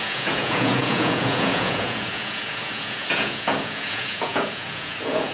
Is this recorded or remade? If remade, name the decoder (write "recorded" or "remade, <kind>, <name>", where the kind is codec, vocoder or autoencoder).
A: remade, vocoder, Vocos